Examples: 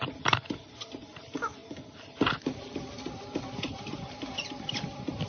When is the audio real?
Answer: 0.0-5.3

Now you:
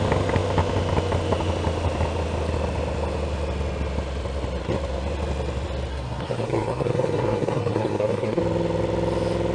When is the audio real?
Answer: 0.0-5.9; 8.4-9.5

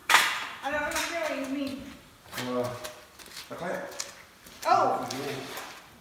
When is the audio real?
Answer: 1.0-6.0

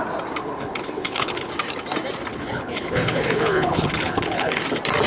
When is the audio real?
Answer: 0.0-0.4; 1.5-2.3; 4.6-5.1